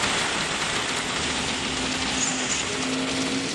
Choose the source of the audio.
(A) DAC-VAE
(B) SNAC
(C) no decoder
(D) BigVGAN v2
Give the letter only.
C